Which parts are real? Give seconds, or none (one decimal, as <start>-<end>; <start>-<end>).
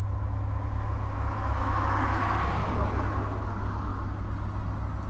2.7-5.1